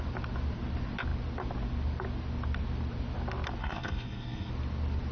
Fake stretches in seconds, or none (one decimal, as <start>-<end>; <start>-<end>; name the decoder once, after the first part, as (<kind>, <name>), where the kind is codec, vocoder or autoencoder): 3.6-4.5 (codec, SNAC)